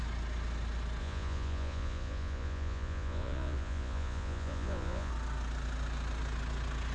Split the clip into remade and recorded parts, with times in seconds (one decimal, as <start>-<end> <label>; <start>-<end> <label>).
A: 0.0-1.0 recorded; 1.0-5.1 remade; 5.1-6.9 recorded